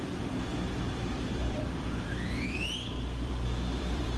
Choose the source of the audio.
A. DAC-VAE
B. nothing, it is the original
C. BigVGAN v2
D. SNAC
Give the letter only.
C